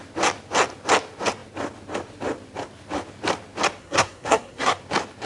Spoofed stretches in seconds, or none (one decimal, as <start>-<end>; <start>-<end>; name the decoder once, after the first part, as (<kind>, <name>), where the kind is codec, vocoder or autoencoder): 3.8-4.8 (codec, SNAC)